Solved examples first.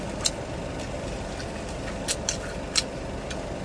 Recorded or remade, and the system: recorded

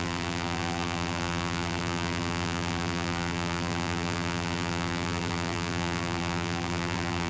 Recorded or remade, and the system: remade, vocoder, BigVGAN v2